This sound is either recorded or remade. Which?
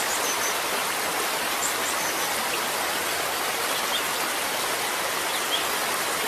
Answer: recorded